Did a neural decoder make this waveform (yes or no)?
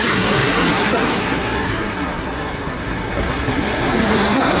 yes